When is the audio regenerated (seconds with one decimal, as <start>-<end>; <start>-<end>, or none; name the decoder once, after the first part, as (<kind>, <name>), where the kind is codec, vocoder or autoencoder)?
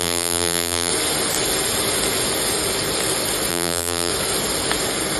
0.0-0.9 (vocoder, BigVGAN v2); 3.5-4.1